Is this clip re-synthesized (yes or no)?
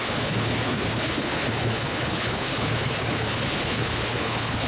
yes